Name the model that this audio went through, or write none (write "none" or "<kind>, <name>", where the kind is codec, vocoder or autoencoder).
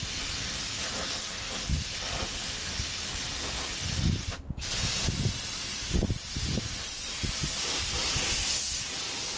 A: none